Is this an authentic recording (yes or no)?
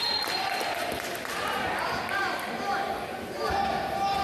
no